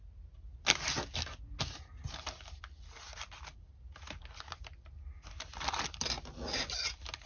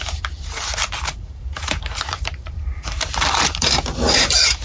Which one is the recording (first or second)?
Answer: first